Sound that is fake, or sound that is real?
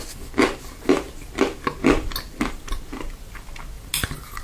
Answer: real